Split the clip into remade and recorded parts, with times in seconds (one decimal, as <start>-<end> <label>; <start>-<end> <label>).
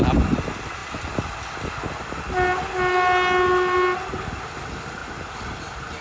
0.0-6.0 recorded